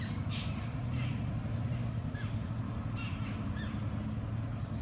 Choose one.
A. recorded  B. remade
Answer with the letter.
A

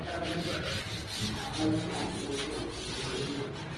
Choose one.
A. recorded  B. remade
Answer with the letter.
A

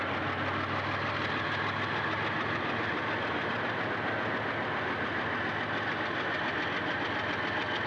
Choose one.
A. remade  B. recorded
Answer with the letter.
B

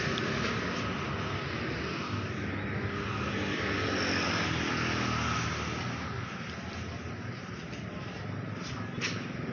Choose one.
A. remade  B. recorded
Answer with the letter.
B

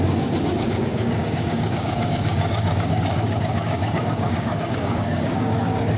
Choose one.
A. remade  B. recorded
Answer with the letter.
A